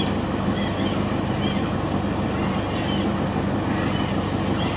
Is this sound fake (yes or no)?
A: no